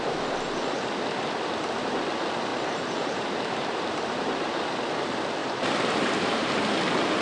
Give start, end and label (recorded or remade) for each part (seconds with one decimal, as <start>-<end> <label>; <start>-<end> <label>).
0.0-2.5 recorded; 2.5-4.7 remade; 4.7-5.4 recorded; 5.4-6.5 remade; 6.5-7.2 recorded